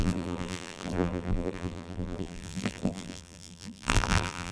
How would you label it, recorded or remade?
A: remade